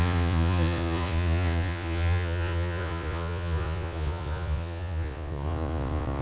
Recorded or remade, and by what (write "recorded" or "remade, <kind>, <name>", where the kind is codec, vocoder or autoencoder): remade, vocoder, Vocos